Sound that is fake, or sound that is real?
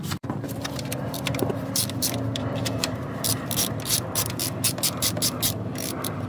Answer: fake